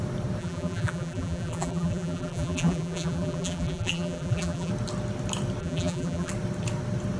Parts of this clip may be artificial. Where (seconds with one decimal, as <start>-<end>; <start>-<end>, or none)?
0.4-4.7; 5.6-6.3